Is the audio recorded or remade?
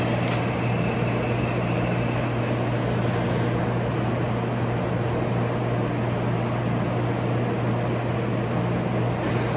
recorded